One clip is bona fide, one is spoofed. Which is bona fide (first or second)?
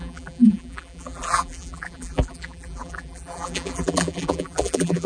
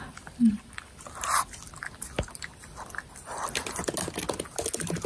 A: second